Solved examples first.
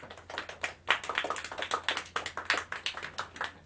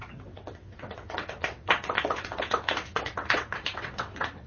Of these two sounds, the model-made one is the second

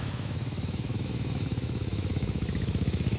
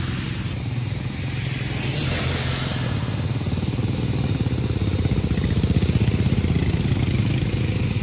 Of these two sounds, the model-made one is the first